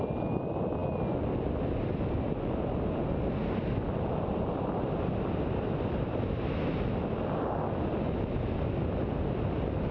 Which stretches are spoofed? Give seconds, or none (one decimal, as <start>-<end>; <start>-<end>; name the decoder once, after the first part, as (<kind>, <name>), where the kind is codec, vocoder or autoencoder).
none